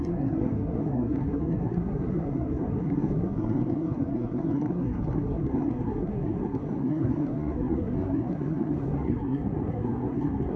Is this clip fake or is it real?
fake